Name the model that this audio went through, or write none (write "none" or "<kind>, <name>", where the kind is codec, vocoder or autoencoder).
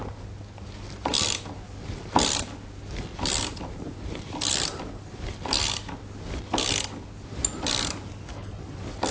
none